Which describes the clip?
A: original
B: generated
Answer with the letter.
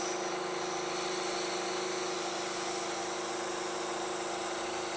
A